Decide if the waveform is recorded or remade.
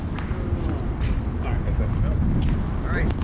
recorded